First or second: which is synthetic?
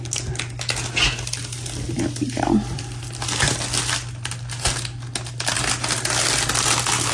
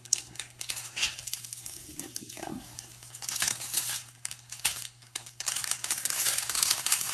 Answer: second